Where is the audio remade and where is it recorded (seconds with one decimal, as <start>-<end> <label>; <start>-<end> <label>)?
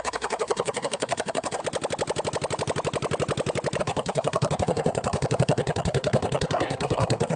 0.0-1.6 remade; 1.6-3.8 recorded; 3.8-7.4 remade